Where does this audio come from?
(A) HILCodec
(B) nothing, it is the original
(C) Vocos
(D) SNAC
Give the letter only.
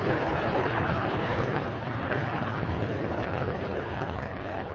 A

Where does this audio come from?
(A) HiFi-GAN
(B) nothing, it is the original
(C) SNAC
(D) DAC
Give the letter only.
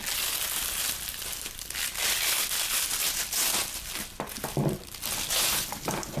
B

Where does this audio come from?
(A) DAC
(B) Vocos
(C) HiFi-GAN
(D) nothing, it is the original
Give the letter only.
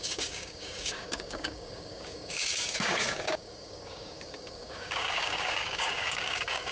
A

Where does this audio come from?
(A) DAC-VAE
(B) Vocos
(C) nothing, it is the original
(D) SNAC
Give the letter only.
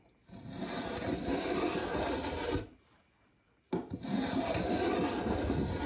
C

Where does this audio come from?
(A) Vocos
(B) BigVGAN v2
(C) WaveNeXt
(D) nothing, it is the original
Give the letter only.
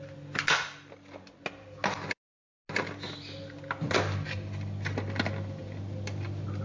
D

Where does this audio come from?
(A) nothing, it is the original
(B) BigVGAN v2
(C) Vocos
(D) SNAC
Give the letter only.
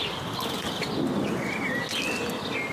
A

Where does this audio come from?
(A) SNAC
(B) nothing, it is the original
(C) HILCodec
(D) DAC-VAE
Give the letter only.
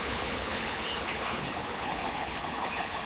C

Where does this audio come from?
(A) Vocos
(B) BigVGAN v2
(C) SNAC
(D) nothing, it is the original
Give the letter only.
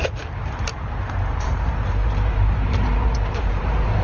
B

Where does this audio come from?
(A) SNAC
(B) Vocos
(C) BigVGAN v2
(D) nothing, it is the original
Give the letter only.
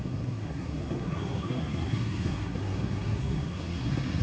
A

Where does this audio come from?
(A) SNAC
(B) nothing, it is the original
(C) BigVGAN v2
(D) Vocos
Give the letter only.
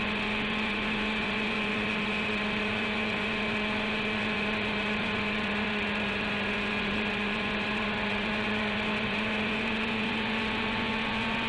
D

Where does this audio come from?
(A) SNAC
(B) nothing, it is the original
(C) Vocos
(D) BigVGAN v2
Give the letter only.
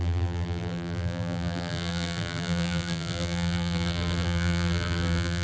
D